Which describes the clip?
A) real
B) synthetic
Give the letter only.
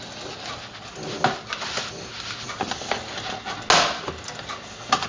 A